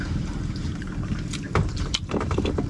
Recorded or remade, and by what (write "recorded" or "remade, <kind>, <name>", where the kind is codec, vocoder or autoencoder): recorded